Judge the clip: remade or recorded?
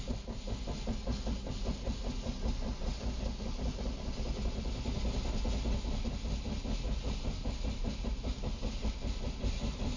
recorded